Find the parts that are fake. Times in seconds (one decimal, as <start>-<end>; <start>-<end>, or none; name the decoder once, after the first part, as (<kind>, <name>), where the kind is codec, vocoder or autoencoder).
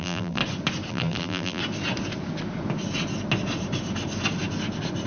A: 0.0-0.4 (vocoder, BigVGAN v2); 0.9-1.6